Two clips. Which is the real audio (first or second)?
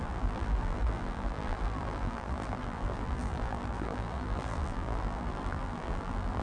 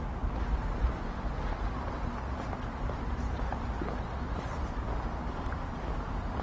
second